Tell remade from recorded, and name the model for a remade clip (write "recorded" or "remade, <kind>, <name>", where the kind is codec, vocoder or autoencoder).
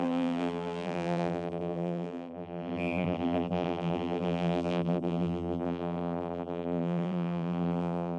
remade, vocoder, BigVGAN v2